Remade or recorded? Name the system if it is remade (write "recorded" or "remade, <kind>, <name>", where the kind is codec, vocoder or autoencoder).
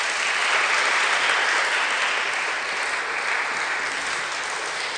recorded